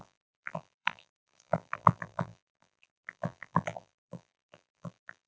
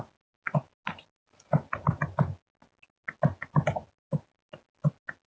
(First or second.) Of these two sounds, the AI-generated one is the first